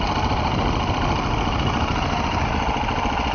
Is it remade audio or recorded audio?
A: recorded